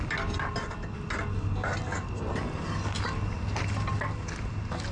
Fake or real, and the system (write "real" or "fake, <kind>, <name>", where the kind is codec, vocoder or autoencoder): real